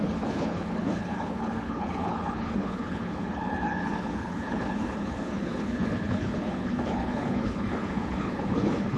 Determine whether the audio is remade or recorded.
remade